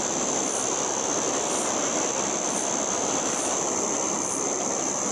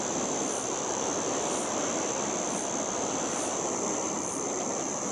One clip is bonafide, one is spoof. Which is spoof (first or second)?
second